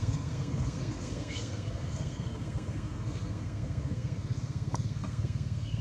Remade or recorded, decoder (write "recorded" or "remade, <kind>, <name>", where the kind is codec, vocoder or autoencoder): remade, codec, SNAC